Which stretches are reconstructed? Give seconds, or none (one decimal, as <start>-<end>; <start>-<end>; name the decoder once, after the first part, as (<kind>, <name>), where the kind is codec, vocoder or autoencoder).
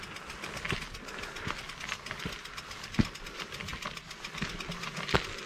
none